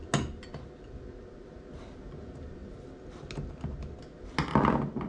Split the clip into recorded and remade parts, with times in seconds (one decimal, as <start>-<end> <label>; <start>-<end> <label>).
0.0-5.1 recorded